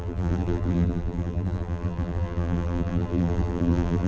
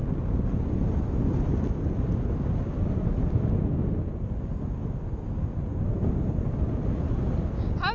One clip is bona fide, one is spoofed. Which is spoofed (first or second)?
first